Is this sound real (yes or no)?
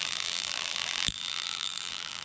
no